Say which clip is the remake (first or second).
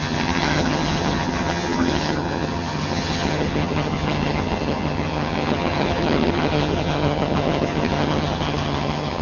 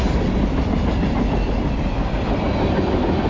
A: first